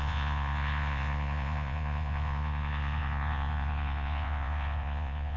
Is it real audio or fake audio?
fake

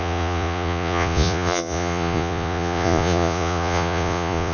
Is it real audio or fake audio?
fake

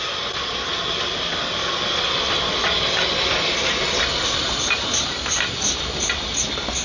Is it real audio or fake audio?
real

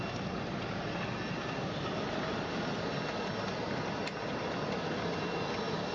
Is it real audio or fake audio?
real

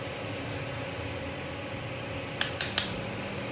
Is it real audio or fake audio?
real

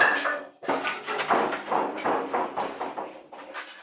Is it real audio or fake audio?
real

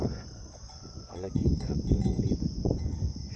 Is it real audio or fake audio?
fake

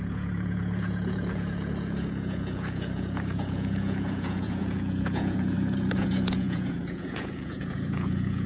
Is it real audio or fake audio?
fake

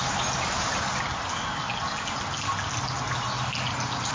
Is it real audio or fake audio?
real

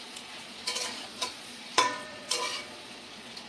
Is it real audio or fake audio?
fake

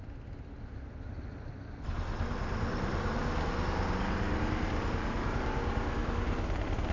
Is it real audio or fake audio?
real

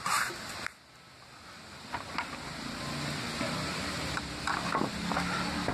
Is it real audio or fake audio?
real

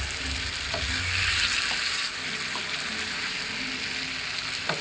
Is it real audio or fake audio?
real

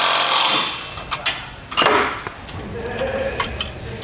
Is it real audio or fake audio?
real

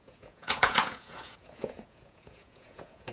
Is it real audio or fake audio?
fake